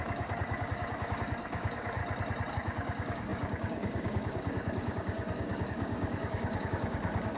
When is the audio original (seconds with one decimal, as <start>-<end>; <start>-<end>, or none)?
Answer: 2.0-2.5